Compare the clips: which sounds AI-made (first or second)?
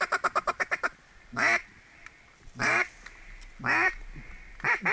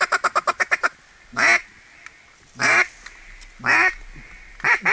first